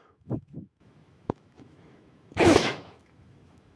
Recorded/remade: remade